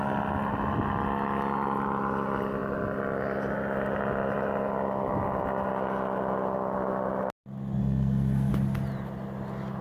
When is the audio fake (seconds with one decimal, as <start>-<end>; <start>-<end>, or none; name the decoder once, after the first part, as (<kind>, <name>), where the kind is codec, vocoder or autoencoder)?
7.8-8.5 (codec, SNAC)